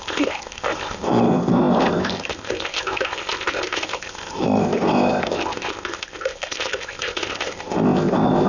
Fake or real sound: fake